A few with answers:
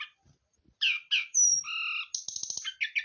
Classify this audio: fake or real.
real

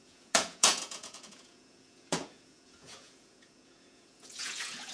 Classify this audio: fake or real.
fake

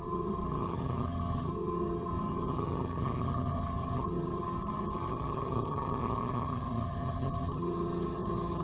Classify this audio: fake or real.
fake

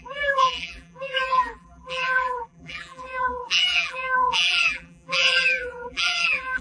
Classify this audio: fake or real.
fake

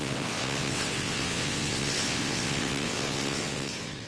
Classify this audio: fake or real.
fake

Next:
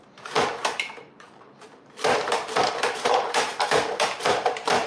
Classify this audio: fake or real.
fake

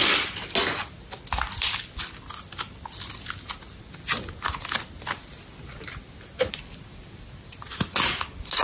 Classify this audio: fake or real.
real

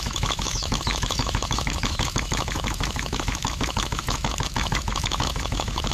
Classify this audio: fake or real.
fake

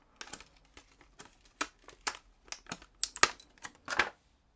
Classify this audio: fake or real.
real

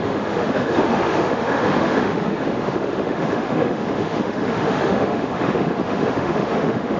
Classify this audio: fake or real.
fake